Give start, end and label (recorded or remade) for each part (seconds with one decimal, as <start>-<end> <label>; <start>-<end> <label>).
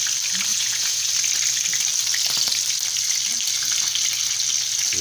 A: 0.0-0.5 recorded; 0.5-1.1 remade; 1.1-5.0 recorded